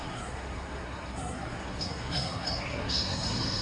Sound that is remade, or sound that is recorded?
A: remade